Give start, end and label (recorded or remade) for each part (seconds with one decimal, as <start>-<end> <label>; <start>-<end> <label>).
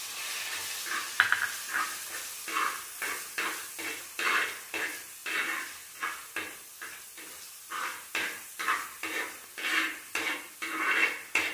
0.0-11.5 recorded